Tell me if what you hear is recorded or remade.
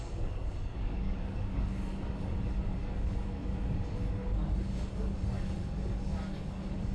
remade